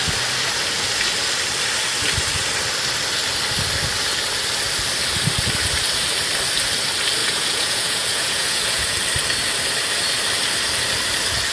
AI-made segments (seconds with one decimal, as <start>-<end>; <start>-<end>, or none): 7.2-9.0